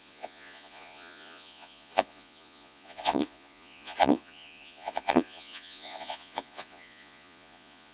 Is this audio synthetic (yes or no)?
yes